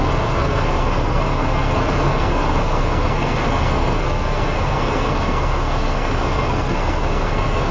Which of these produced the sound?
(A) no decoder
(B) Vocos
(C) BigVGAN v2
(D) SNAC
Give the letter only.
D